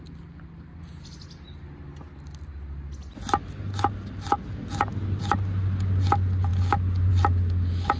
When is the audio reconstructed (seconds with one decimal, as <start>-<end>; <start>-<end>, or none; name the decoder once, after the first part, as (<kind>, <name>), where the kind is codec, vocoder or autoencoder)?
none